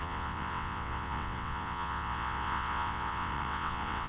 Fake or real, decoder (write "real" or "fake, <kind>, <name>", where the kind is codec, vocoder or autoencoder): fake, vocoder, WaveNeXt